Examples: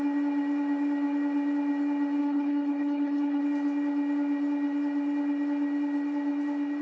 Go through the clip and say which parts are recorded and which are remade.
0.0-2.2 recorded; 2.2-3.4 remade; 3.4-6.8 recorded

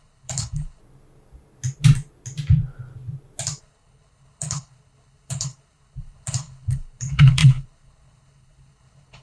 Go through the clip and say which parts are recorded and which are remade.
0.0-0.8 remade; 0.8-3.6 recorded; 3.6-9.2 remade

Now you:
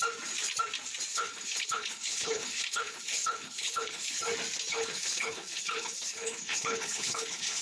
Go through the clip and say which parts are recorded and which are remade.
0.0-1.1 recorded; 1.1-4.2 remade; 4.2-4.7 recorded; 4.7-7.6 remade

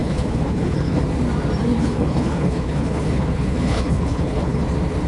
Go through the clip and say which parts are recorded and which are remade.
0.0-1.0 remade; 1.0-1.8 recorded; 1.8-4.6 remade; 4.6-5.1 recorded

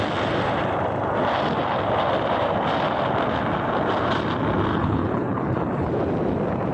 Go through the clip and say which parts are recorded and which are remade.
0.0-4.7 recorded; 4.7-5.9 remade; 5.9-6.7 recorded